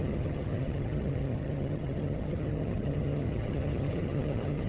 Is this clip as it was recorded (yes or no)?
no